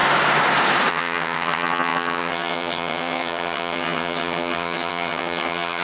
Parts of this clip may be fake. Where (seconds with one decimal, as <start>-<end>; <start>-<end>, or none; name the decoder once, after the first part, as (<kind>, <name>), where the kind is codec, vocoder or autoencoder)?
0.9-5.8 (vocoder, HiFi-GAN)